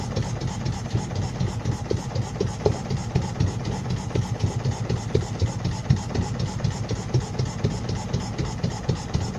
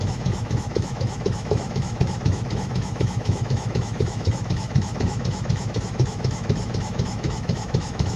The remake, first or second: second